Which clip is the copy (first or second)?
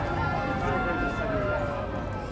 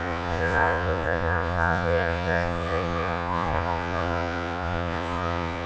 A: second